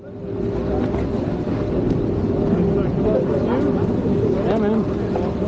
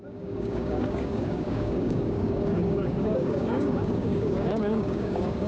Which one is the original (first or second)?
first